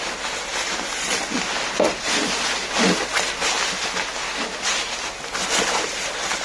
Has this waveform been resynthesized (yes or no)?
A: no